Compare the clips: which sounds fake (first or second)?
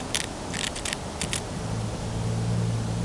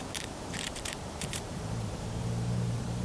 second